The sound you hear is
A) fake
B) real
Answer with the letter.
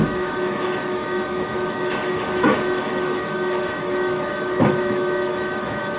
A